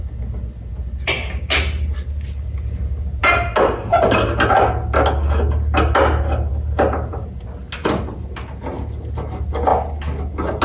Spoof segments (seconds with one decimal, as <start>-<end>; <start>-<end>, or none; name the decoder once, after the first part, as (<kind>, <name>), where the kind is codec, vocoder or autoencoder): none

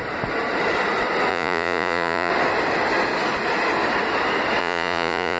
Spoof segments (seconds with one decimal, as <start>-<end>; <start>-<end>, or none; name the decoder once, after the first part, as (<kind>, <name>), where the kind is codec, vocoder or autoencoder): 1.3-2.3 (vocoder, Vocos); 4.6-5.4

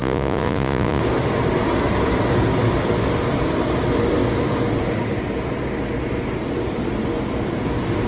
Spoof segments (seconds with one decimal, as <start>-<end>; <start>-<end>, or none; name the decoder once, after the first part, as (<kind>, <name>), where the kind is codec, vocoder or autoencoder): 0.0-1.0 (vocoder, Vocos)

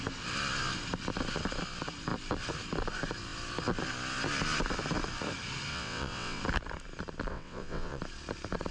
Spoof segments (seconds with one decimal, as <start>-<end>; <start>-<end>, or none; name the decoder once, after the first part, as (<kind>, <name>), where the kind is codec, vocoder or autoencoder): 5.7-6.4 (vocoder, WaveNeXt); 7.3-8.0

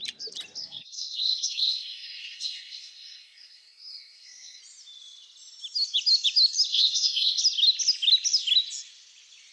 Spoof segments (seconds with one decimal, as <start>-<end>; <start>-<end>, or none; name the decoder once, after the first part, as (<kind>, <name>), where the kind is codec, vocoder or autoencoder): 0.6-4.6 (codec, SNAC); 6.7-7.4

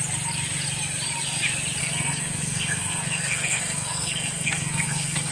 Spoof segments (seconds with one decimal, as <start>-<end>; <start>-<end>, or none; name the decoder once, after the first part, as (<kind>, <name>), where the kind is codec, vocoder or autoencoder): 1.8-5.3 (codec, SNAC)

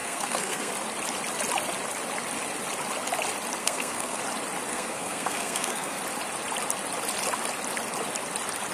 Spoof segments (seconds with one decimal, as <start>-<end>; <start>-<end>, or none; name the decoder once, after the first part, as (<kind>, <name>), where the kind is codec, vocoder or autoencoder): 0.0-0.7 (codec, SNAC); 3.6-4.2; 4.7-6.0